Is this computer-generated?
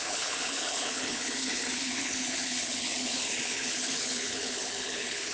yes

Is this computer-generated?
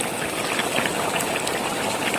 no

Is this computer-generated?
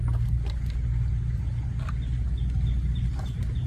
no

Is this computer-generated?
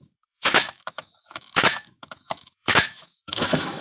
yes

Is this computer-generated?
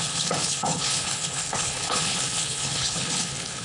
yes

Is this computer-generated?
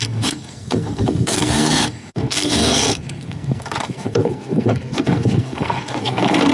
yes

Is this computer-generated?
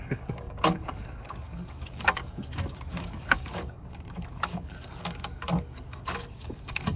yes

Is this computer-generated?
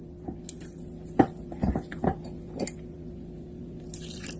no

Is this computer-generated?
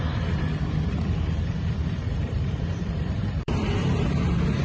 yes